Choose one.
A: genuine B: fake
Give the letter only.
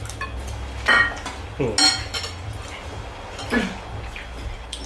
A